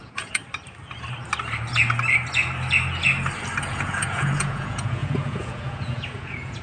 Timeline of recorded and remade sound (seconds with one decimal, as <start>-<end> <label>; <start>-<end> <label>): 0.0-0.4 remade; 0.4-3.6 recorded; 3.6-6.6 remade